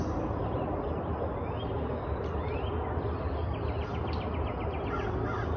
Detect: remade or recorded recorded